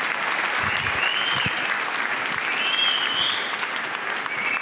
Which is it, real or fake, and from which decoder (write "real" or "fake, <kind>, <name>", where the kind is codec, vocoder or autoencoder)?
real